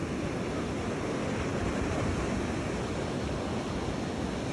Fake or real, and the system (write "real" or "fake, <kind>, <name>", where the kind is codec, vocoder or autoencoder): real